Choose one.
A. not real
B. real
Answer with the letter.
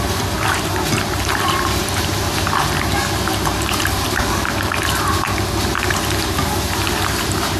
A